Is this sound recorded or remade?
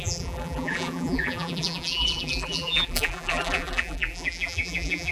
remade